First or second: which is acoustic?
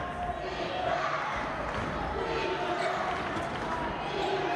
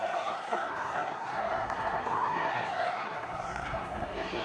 first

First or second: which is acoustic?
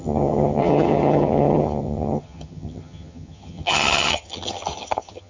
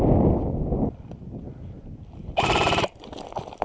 second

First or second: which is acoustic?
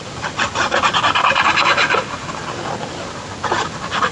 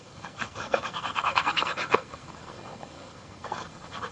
first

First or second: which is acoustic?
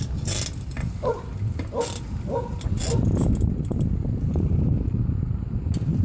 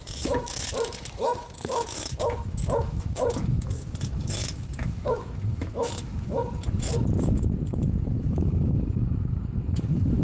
first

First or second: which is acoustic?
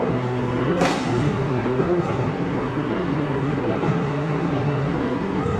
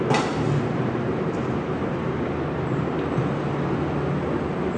second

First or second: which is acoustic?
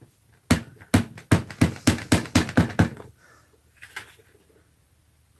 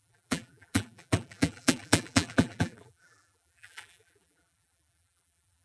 first